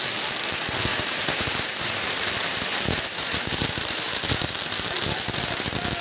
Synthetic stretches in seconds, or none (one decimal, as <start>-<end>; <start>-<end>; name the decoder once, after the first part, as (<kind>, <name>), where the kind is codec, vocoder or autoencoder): 0.9-4.5 (vocoder, BigVGAN v2)